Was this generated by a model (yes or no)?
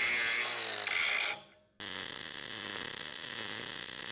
no